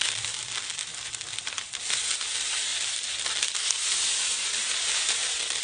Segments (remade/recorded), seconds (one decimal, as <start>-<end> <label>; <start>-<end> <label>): 0.0-5.6 recorded